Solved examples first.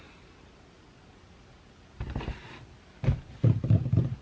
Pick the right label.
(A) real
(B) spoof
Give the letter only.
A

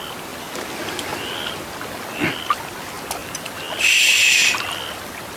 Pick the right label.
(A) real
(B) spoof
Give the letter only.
A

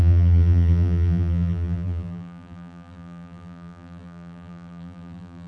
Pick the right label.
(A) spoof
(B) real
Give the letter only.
A